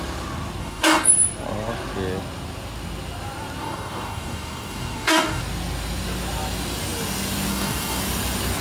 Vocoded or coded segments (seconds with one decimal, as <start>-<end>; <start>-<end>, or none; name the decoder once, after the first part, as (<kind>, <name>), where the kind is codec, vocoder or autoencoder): 0.6-1.1 (codec, DAC); 3.6-5.4; 7.5-8.0